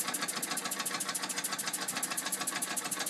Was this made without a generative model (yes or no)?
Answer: yes